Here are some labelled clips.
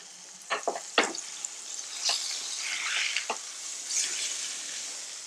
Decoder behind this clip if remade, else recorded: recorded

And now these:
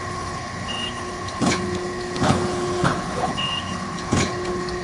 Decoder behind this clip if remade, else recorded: remade, codec, HILCodec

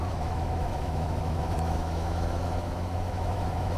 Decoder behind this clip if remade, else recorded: remade, autoencoder, DAC-VAE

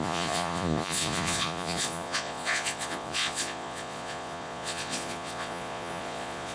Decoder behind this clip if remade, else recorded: remade, vocoder, Vocos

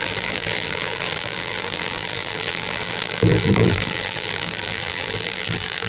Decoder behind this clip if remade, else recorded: remade, vocoder, BigVGAN v2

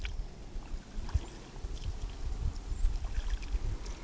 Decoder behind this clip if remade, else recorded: recorded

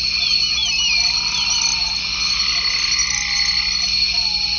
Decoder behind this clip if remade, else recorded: recorded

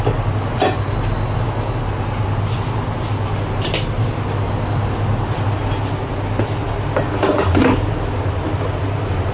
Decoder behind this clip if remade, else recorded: recorded